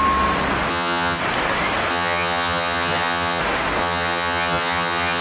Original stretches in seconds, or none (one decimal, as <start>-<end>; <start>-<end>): 0.0-0.7; 1.2-1.9; 3.4-3.8